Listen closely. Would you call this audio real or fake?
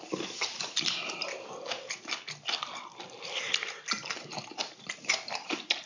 real